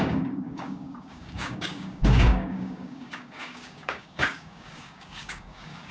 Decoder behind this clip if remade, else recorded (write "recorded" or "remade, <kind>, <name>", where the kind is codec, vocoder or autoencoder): remade, codec, DAC